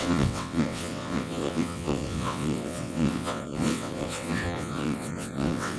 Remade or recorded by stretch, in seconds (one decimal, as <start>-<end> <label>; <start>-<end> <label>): 0.0-5.8 remade